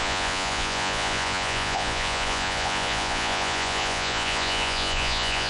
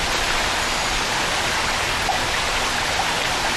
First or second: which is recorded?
second